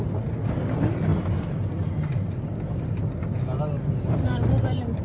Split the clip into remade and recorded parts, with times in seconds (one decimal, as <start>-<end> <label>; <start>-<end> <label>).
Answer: 0.0-5.0 recorded